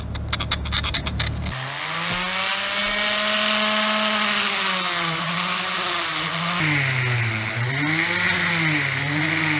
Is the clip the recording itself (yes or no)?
yes